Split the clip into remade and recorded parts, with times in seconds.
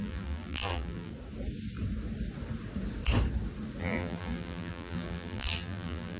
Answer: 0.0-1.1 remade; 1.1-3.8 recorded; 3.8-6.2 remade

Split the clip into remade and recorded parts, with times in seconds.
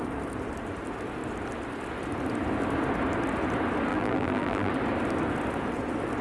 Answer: 0.0-3.9 recorded; 3.9-4.7 remade; 4.7-6.2 recorded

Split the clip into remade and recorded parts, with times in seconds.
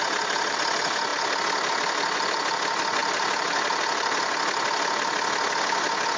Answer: 0.0-3.0 recorded; 3.0-3.8 remade; 3.8-6.2 recorded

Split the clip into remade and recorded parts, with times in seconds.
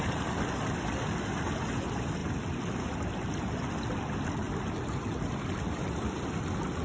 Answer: 0.0-6.8 recorded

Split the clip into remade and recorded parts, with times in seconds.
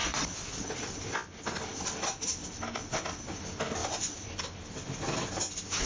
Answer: 0.0-1.0 remade; 1.0-1.7 recorded; 1.7-2.6 remade; 2.6-3.8 recorded; 3.8-4.4 remade; 4.4-5.9 recorded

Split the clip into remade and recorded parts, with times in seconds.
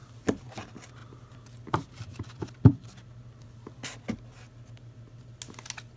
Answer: 0.0-0.6 remade; 0.6-1.0 recorded; 1.0-4.0 remade; 4.0-6.0 recorded